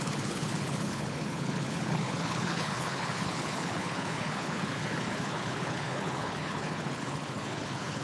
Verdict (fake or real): fake